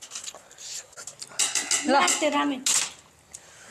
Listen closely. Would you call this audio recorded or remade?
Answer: recorded